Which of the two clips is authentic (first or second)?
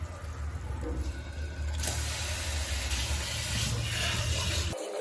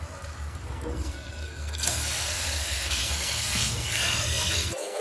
first